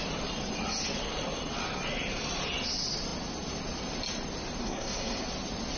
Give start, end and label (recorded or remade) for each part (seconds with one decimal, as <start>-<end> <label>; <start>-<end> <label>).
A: 0.0-4.6 recorded; 4.6-5.2 remade; 5.2-5.8 recorded